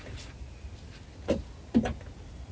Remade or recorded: recorded